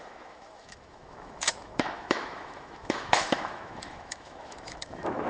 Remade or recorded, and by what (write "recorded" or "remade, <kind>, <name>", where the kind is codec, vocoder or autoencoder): remade, autoencoder, DAC-VAE